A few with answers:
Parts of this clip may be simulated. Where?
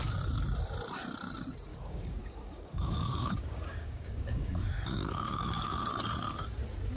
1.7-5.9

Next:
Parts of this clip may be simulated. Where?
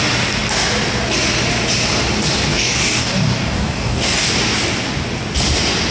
2.5-4.3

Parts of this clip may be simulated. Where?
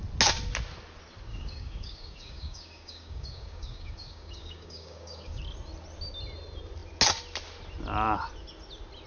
1.3-5.4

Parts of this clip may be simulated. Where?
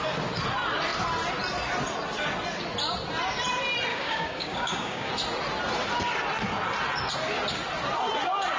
3.9-5.1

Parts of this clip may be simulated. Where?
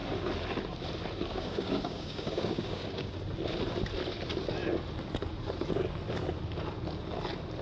1.3-3.1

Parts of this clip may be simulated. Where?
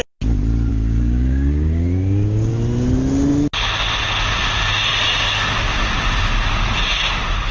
0.7-2.5